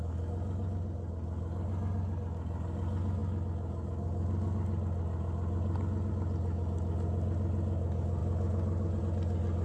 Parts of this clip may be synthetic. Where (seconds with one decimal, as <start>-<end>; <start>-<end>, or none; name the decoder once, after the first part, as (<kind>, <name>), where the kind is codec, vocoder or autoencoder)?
none